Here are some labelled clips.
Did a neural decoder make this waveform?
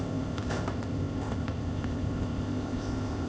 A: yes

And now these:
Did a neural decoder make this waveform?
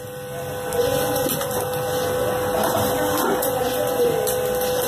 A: yes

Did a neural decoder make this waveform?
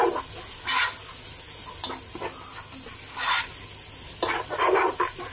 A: no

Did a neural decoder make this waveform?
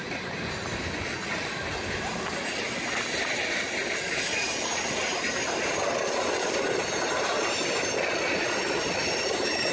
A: no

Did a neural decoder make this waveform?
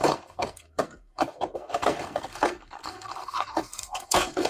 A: yes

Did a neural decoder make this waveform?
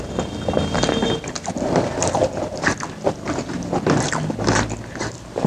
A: no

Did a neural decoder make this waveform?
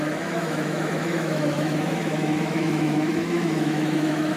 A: yes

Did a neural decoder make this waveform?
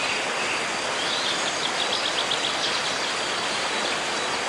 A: no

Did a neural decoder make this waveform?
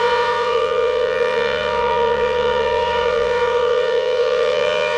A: yes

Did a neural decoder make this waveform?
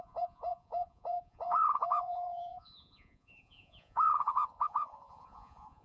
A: yes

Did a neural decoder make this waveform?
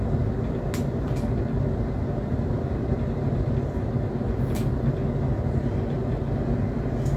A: no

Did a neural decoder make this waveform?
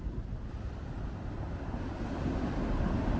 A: no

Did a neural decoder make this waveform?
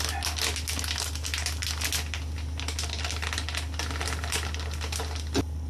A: no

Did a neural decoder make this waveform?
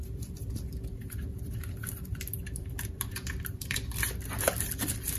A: yes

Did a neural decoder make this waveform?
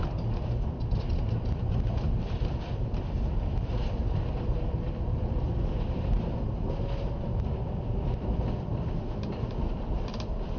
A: yes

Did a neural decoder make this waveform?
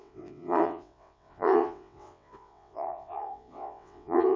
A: yes